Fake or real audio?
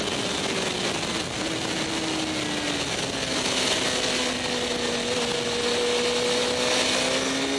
real